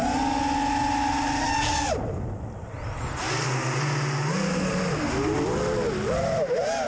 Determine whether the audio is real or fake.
real